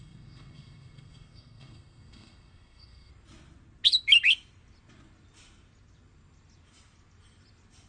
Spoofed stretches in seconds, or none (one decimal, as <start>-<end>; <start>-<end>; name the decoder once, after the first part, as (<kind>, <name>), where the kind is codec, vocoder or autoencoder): 0.0-3.1 (codec, SNAC)